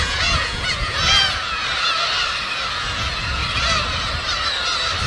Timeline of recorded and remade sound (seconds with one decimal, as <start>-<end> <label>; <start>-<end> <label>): 0.0-1.6 remade; 1.6-2.7 recorded; 2.7-3.4 remade; 3.4-5.1 recorded